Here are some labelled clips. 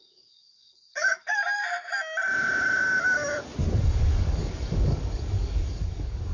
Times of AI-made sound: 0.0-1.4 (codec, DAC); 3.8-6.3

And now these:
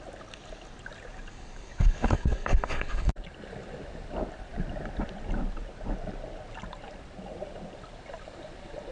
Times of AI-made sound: 1.3-3.1 (codec, DAC)